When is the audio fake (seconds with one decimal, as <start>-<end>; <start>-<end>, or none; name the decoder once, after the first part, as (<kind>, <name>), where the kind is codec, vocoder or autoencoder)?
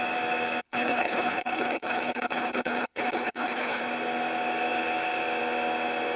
0.6-3.8 (codec, HILCodec)